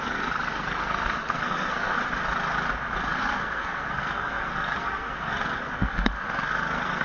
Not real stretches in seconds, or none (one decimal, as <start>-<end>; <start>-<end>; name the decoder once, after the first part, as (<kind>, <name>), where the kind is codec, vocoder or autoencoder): 0.0-2.0 (codec, SNAC); 3.1-7.0